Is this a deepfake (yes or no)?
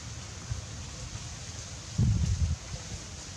no